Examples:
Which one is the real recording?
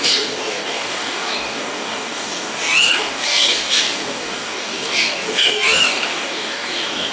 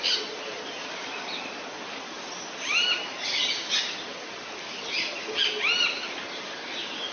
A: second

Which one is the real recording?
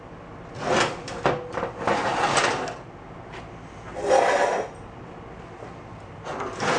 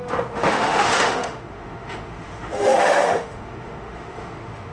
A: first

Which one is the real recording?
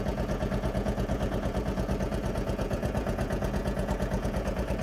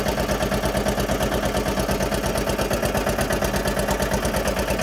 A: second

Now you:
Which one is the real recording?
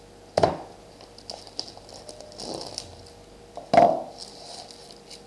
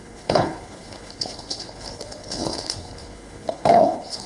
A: first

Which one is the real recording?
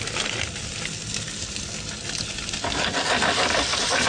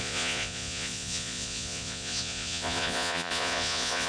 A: first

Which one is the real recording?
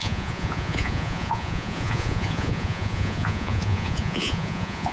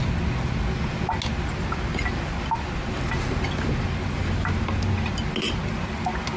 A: second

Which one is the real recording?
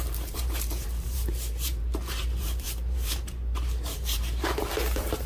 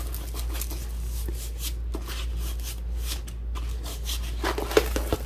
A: second